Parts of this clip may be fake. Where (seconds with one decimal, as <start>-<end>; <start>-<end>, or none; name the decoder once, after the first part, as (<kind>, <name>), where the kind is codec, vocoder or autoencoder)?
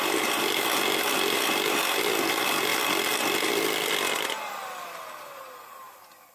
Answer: 2.7-3.9 (vocoder, BigVGAN v2)